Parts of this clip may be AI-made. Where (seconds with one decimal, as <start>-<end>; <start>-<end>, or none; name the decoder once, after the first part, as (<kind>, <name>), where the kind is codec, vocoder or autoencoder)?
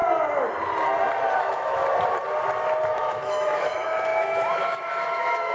1.4-1.8 (autoencoder, DAC-VAE); 2.9-5.5